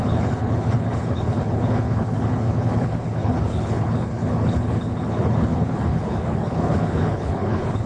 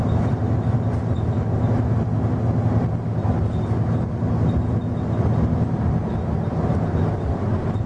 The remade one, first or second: first